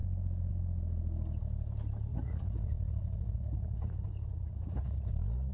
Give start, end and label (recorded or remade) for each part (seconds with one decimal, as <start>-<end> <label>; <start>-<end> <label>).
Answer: 0.0-2.1 recorded; 2.1-5.1 remade; 5.1-5.5 recorded